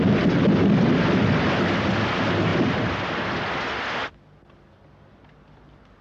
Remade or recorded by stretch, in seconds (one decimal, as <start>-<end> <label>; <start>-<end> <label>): 0.0-6.0 recorded